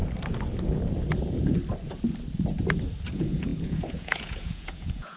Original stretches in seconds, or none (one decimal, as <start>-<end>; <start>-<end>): 0.0-3.1